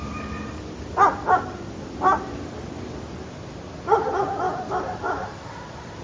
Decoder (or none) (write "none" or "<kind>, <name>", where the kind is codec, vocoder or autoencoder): none